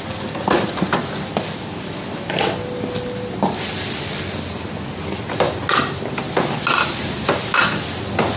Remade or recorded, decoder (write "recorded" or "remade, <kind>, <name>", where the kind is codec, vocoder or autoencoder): recorded